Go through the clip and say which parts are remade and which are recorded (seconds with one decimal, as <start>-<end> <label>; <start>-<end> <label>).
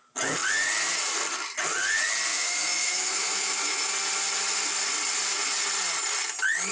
0.0-2.3 recorded; 2.3-3.9 remade; 3.9-6.7 recorded